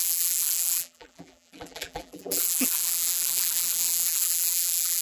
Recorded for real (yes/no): no